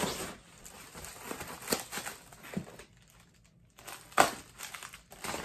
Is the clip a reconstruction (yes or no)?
no